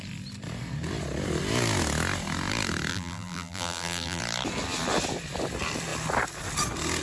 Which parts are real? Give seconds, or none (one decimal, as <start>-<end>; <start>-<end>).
0.0-2.9; 4.2-7.0